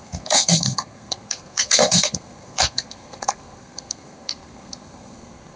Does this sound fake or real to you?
fake